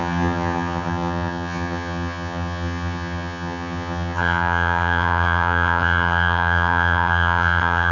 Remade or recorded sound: remade